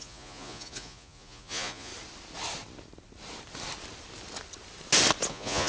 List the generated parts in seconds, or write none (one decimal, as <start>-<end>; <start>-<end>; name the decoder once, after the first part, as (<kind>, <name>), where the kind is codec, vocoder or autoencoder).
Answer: 0.0-1.9 (vocoder, Vocos); 5.3-5.7

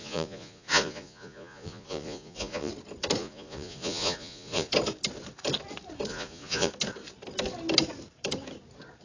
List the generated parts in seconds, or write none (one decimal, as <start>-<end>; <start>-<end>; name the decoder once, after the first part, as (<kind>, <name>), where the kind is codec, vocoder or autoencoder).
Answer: 0.0-2.7 (vocoder, Vocos); 3.2-4.7; 6.1-6.7

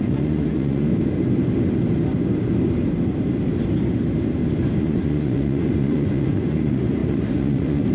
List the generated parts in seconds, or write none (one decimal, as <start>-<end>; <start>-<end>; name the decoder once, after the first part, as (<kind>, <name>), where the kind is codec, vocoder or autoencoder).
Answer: 0.0-0.9 (vocoder, Vocos); 4.8-7.9

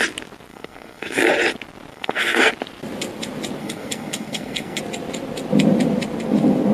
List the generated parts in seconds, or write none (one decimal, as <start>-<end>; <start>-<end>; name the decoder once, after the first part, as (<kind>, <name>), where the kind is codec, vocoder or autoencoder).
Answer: 0.5-1.2 (codec, SNAC); 1.9-2.5; 3.6-4.8